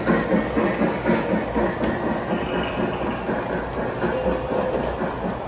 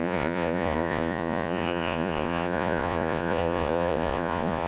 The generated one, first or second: second